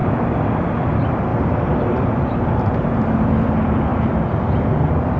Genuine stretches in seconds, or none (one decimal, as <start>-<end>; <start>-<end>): 0.0-5.2